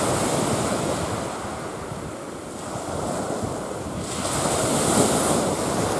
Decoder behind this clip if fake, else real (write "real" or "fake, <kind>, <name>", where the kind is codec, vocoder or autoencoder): real